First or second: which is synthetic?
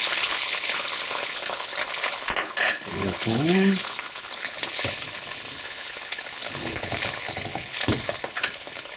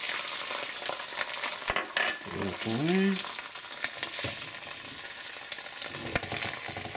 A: first